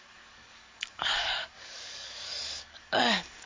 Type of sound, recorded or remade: remade